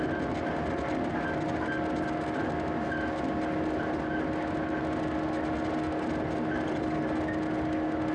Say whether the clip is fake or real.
real